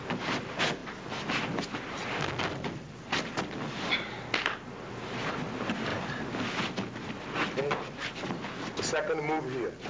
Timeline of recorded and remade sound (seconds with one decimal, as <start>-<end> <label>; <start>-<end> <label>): 0.0-9.9 recorded